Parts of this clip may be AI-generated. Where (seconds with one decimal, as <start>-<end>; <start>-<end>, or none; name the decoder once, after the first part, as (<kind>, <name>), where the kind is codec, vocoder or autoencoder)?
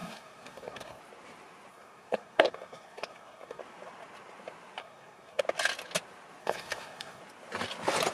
0.0-1.0 (codec, SNAC); 1.7-3.6; 4.8-5.4; 6.4-7.2